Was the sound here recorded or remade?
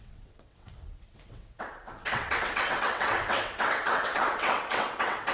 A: remade